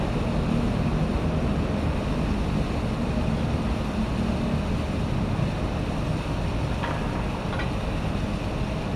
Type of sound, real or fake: real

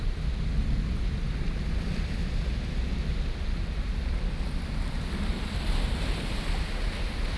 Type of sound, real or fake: real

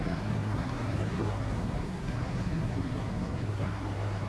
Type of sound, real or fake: fake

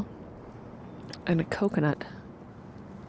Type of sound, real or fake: real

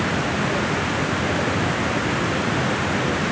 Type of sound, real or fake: real